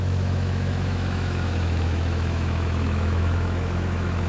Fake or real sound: fake